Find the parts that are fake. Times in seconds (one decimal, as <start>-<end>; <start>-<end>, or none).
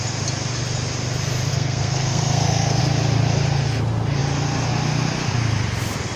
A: 1.5-2.8